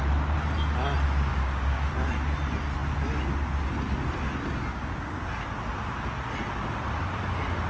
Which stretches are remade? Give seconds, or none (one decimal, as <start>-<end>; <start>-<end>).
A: 1.3-1.9; 4.7-5.2